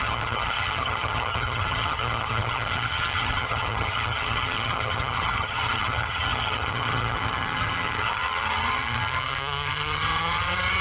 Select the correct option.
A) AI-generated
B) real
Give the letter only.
A